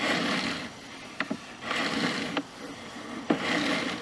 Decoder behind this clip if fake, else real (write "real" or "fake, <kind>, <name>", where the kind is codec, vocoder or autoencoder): real